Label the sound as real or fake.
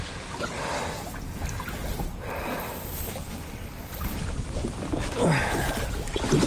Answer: real